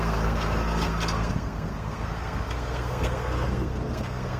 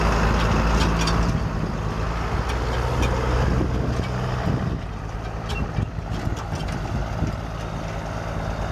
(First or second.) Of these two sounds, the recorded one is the second